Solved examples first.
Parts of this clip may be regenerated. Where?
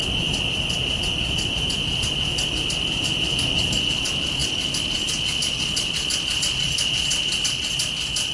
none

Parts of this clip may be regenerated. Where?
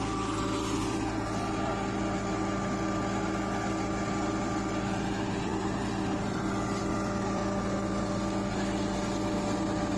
0.0-1.7 (vocoder, BigVGAN v2); 4.4-7.4